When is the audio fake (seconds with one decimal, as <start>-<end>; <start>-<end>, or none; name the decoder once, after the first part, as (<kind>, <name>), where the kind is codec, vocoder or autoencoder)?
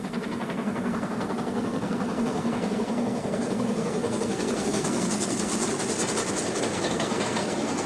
0.0-5.5 (codec, SNAC); 6.6-7.9